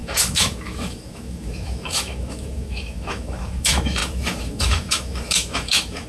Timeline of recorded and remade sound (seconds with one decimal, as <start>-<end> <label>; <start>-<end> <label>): 0.0-6.1 remade